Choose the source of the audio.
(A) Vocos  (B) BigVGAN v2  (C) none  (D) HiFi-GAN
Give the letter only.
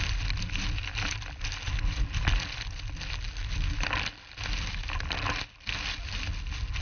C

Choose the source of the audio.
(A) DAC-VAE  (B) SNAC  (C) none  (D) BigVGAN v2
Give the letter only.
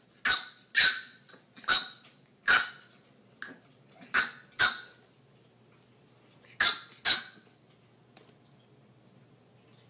C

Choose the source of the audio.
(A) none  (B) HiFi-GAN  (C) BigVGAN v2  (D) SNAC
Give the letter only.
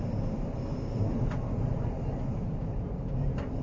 A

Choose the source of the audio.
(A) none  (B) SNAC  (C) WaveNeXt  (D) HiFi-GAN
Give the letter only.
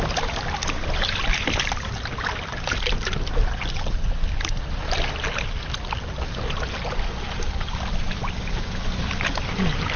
A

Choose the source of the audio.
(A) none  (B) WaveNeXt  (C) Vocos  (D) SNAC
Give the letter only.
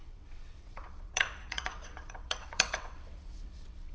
B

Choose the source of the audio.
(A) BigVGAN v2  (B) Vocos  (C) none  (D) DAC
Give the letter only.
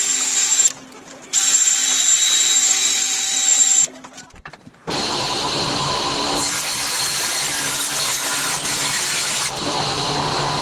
A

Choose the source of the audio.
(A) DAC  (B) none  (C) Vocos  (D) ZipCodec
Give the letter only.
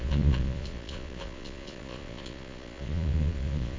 C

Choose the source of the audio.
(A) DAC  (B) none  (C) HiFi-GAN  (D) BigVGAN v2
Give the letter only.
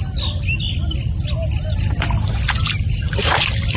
B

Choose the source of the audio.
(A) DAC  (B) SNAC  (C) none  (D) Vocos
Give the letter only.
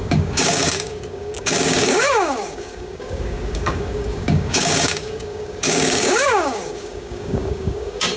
A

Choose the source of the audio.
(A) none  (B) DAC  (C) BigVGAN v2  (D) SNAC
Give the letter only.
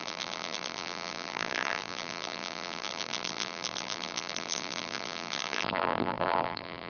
C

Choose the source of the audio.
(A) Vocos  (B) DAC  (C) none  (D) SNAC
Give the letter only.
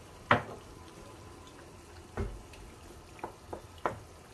C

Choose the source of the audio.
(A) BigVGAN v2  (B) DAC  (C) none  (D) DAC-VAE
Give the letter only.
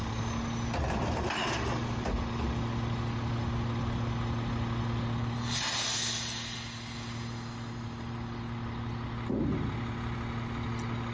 C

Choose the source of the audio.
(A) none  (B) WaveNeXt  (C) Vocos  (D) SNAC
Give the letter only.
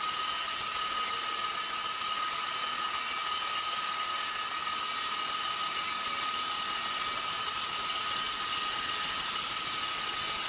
A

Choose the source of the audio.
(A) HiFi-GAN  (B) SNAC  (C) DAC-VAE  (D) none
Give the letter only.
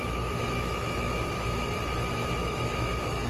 C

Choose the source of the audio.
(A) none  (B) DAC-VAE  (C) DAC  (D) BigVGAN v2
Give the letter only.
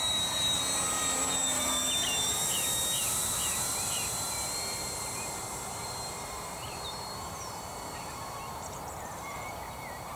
D